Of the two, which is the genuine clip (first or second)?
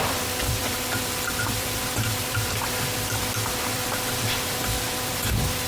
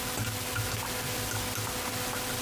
second